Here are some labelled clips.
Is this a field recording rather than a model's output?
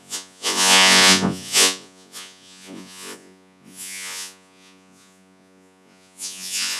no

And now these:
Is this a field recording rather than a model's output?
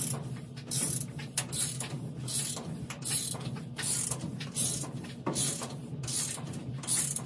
yes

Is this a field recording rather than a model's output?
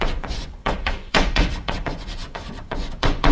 no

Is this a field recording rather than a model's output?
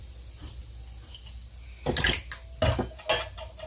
yes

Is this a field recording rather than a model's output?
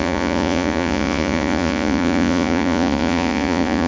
no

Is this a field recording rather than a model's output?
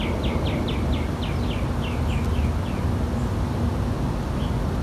yes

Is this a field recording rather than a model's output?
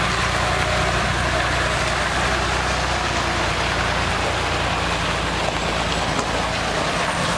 yes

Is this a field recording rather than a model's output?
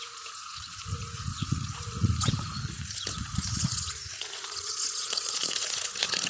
no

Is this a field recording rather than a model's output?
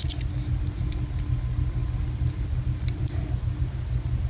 yes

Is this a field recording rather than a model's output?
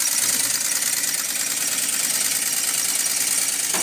yes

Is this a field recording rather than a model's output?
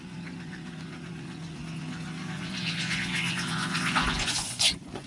no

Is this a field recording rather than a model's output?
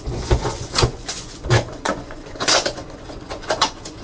no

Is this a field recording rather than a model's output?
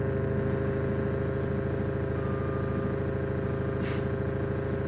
yes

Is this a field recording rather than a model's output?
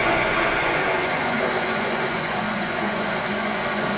no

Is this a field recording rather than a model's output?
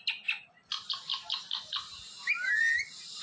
yes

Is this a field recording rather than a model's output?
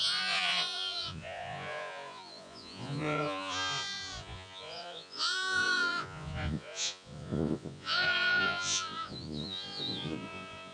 no